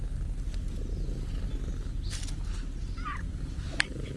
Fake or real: real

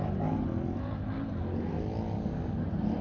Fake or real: real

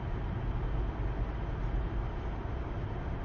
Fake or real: real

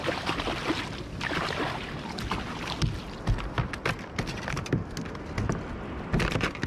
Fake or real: real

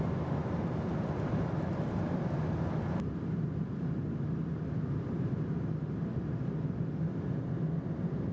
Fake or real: real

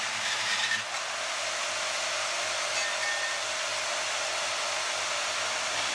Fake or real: real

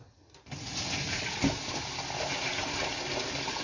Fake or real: real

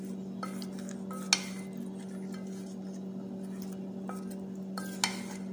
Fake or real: real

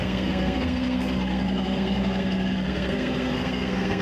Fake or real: fake